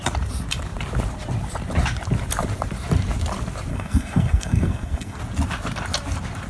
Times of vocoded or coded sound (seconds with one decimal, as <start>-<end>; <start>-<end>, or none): 3.7-5.2